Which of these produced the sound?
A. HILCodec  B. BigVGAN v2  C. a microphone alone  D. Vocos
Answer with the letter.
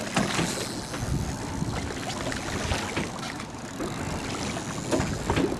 C